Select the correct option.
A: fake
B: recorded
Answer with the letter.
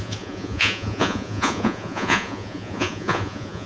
A